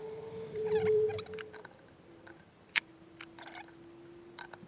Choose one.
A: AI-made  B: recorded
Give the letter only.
A